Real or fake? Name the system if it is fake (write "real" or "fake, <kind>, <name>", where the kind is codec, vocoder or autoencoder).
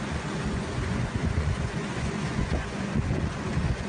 fake, vocoder, Vocos